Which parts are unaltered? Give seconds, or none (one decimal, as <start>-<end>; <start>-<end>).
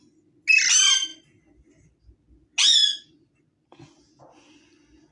0.0-5.1